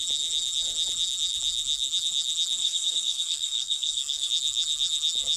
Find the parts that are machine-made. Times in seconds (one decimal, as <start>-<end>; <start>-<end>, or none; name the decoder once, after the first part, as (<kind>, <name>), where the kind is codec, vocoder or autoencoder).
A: 2.6-4.3 (codec, SNAC)